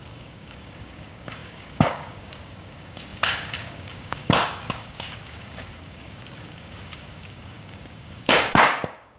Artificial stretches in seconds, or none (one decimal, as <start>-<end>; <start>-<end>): 0.0-9.2